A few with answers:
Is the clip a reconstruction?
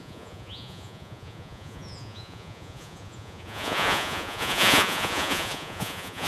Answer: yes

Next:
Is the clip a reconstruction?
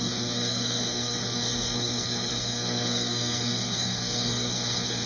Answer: yes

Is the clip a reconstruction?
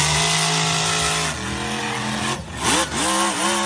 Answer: no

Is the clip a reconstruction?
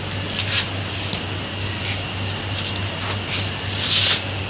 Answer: no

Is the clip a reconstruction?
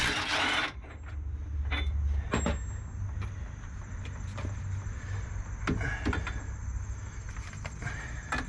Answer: no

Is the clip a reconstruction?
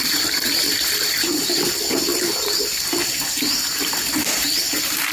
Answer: yes